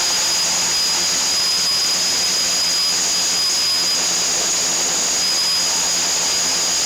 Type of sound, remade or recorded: recorded